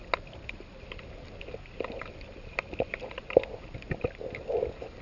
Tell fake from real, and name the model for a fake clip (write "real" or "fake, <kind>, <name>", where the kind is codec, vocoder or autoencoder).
real